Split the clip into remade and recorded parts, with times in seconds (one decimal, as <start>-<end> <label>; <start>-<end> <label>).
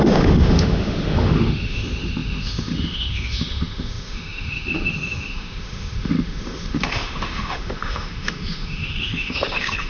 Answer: 0.0-9.9 remade